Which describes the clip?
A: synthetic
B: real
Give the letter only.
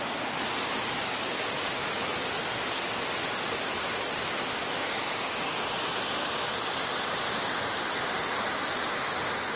B